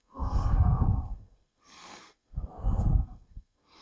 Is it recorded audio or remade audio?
remade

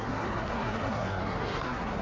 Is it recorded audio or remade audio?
remade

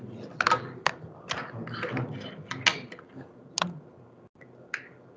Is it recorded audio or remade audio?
recorded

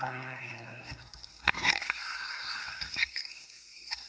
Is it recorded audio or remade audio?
remade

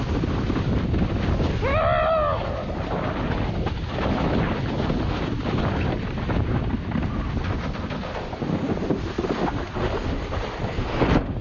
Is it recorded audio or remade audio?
recorded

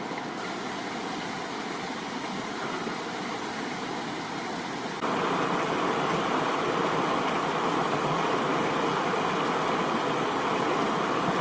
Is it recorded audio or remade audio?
recorded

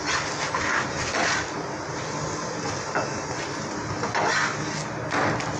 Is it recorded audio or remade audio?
recorded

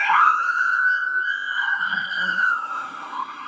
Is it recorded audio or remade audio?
remade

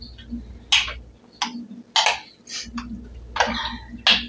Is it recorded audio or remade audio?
recorded